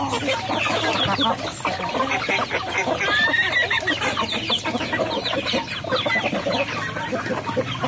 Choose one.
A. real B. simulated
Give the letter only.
A